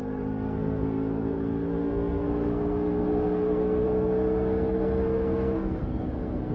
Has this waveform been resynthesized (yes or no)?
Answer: yes